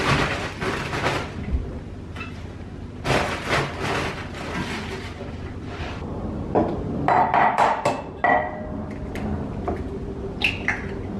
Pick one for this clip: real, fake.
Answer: real